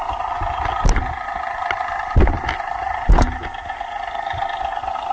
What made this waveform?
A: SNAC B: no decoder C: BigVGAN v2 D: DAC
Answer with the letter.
B